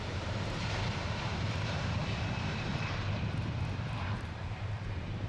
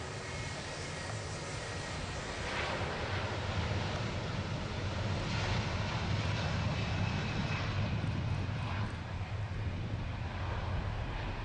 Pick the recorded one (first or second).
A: second